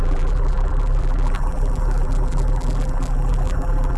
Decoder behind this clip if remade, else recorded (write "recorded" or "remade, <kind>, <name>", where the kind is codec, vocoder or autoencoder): remade, vocoder, BigVGAN v2